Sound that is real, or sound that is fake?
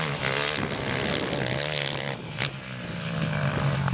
real